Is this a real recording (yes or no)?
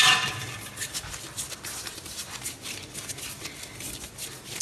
yes